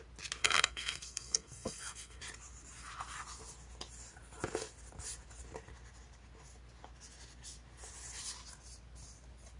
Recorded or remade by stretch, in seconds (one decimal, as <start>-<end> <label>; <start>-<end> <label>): 0.0-0.4 recorded; 0.4-2.2 remade; 2.2-9.6 recorded